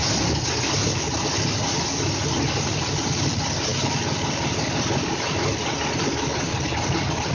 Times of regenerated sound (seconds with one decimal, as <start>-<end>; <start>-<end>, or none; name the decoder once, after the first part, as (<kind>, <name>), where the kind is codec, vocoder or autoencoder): none